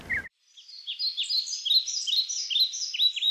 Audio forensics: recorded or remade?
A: recorded